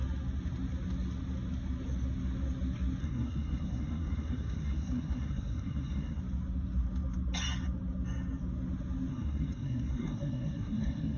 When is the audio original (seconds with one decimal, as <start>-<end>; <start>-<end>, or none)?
0.0-3.0; 6.2-9.1